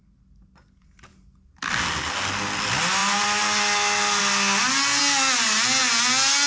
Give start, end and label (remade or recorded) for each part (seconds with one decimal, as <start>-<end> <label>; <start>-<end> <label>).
0.0-6.5 recorded